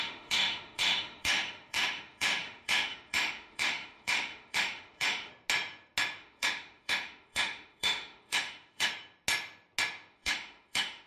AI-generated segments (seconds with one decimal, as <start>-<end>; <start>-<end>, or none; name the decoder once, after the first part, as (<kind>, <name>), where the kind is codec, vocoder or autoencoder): 0.0-5.3 (autoencoder, DAC-VAE); 6.2-8.9; 10.1-11.1